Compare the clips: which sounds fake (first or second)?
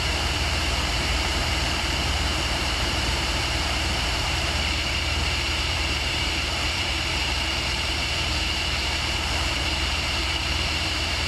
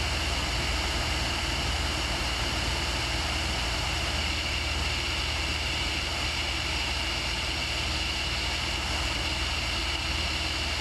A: first